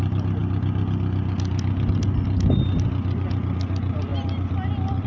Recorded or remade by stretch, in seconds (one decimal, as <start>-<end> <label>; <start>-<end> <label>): 0.0-5.1 recorded

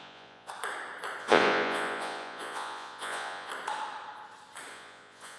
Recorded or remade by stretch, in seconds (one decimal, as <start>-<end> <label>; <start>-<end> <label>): 0.0-0.5 remade; 0.5-1.2 recorded; 1.2-3.5 remade; 3.5-4.7 recorded; 4.7-5.4 remade

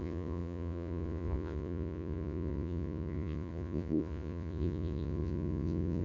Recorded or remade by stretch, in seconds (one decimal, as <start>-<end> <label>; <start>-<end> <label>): 0.0-6.0 remade